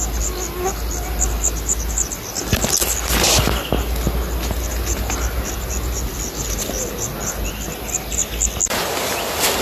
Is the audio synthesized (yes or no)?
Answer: no